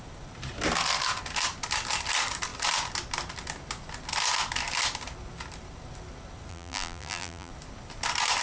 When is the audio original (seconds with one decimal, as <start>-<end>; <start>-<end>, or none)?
0.0-6.5; 7.5-8.4